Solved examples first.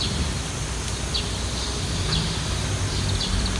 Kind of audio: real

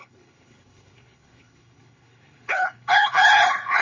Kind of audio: fake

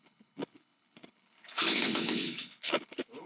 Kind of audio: fake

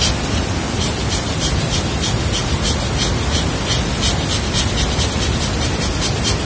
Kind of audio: real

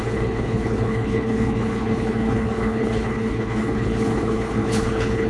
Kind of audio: fake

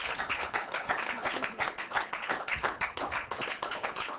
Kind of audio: fake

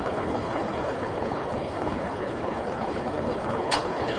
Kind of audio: fake